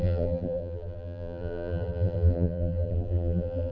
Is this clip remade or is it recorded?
remade